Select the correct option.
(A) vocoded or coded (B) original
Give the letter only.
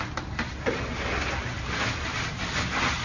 B